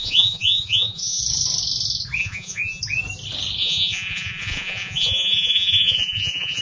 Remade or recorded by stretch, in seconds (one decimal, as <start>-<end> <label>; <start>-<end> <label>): 0.0-1.2 remade; 1.2-2.2 recorded; 2.2-2.8 remade; 2.8-3.6 recorded; 3.6-6.6 remade